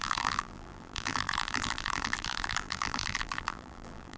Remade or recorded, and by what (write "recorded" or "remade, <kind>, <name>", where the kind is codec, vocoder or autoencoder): remade, vocoder, BigVGAN v2